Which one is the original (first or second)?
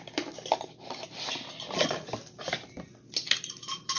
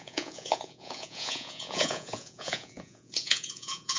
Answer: first